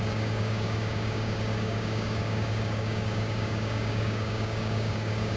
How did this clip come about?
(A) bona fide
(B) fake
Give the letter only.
B